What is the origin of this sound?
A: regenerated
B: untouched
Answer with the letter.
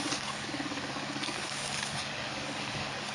A